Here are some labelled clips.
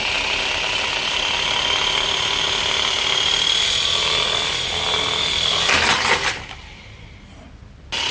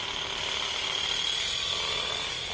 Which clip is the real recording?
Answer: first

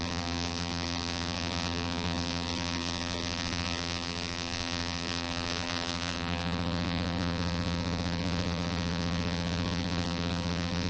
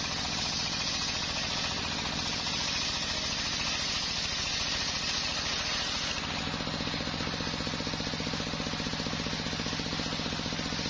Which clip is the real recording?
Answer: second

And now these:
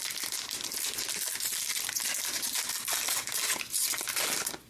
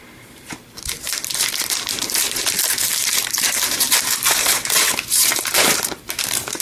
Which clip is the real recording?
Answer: first